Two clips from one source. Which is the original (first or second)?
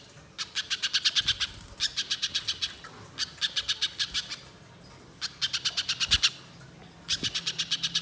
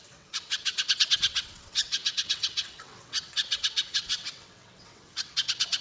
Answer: first